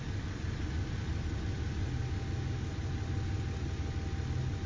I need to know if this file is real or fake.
real